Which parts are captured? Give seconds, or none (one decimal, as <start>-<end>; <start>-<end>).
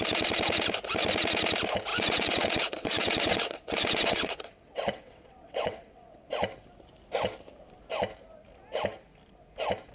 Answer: 0.0-1.9; 6.3-9.9